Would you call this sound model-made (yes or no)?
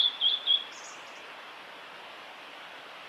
no